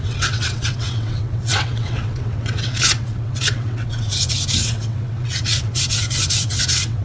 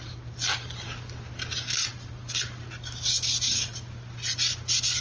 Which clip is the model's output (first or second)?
first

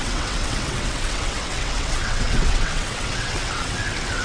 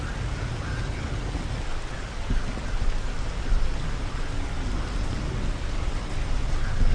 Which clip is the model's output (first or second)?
first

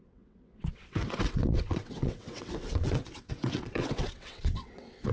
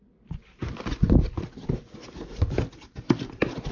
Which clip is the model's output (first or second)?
first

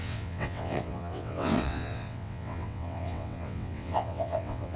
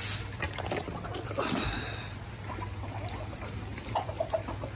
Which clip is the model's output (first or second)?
first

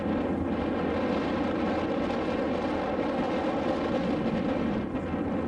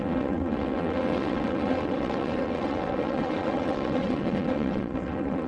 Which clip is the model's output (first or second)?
second